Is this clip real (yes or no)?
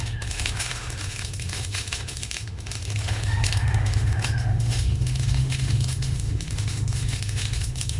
no